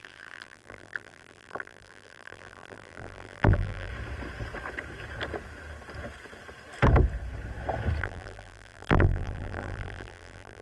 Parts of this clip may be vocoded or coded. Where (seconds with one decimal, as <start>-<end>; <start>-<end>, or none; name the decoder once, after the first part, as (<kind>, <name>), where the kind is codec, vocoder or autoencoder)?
0.0-3.9 (vocoder, BigVGAN v2); 8.0-10.6